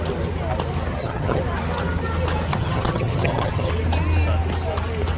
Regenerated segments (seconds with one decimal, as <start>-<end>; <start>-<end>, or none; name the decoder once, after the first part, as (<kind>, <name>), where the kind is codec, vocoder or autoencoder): 0.9-1.4 (vocoder, HiFi-GAN); 2.5-3.7